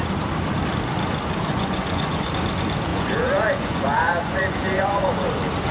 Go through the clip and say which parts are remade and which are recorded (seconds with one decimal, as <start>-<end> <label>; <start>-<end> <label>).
0.0-1.5 recorded; 1.5-2.3 remade; 2.3-2.9 recorded; 2.9-5.3 remade; 5.3-5.7 recorded